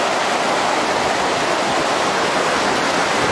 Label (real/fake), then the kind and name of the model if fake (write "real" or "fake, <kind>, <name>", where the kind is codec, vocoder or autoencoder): real